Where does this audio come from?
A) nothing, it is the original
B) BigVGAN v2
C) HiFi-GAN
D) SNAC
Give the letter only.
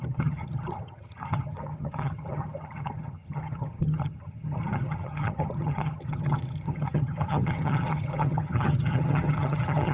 C